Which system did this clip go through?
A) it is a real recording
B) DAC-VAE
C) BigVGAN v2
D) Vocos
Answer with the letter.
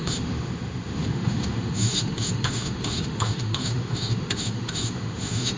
B